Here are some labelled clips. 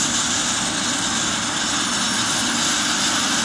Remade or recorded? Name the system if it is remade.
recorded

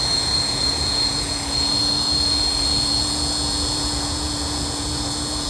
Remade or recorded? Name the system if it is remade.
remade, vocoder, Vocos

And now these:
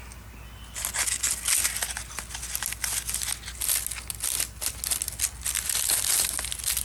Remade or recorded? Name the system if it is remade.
recorded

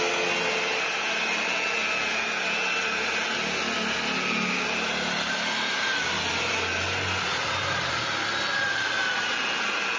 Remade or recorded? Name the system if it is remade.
recorded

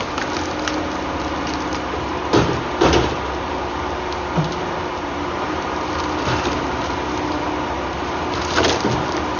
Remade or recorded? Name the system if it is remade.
recorded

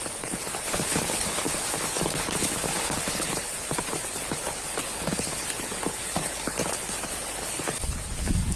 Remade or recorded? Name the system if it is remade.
remade, codec, HILCodec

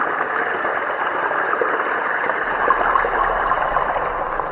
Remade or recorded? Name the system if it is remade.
recorded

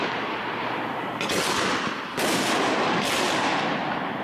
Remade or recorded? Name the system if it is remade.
recorded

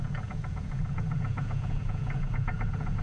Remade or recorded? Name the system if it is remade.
remade, vocoder, Vocos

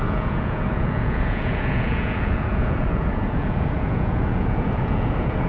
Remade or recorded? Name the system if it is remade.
remade, vocoder, Vocos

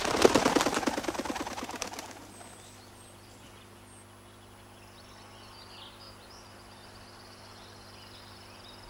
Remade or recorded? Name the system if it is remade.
recorded